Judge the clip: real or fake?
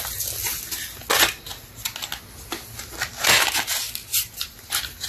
real